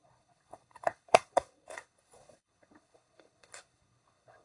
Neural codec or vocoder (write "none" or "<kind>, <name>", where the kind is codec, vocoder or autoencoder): codec, HILCodec